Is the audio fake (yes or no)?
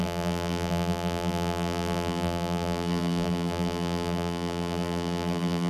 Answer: yes